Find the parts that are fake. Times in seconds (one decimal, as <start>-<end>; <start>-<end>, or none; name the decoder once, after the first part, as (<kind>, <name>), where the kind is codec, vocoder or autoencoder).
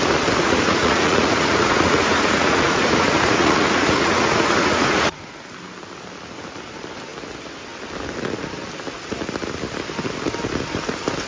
0.4-5.2 (vocoder, Vocos)